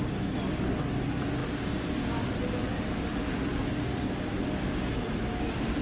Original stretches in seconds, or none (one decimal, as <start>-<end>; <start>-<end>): 0.0-5.8